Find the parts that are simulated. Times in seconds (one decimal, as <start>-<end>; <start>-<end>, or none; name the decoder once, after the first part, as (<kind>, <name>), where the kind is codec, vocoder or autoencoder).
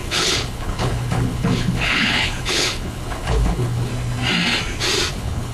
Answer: 0.0-3.9 (codec, HILCodec); 5.1-5.5